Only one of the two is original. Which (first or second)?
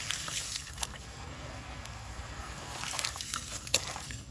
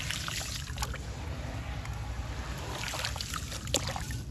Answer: second